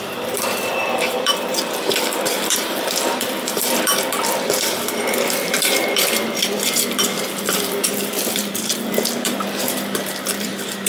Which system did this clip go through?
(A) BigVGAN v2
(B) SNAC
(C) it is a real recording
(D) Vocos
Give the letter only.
A